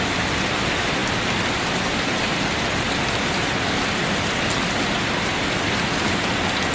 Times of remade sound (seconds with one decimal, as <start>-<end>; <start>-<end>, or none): none